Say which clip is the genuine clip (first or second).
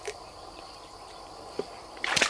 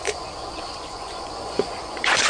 first